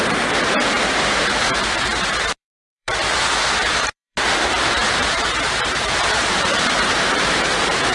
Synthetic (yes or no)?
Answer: yes